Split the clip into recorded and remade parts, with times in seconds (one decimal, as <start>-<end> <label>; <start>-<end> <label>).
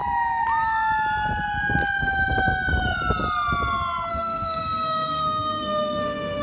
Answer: 0.0-4.1 recorded; 4.1-6.4 remade